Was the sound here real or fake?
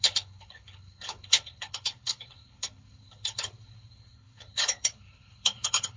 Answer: fake